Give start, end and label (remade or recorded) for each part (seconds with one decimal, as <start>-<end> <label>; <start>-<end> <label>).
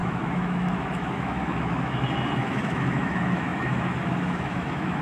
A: 0.0-5.0 remade